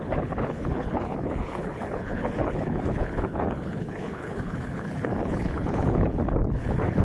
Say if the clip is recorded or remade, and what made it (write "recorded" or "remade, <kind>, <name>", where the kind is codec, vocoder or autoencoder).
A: remade, codec, HILCodec